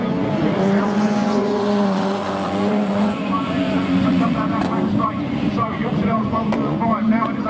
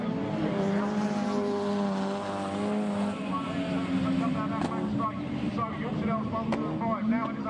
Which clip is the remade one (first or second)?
first